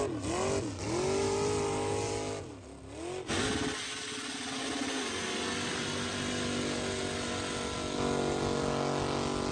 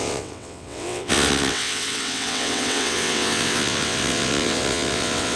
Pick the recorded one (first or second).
first